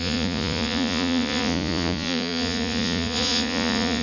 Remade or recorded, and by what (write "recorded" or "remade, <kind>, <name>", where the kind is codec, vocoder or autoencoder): remade, vocoder, Vocos